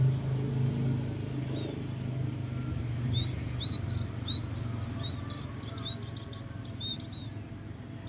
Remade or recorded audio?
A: recorded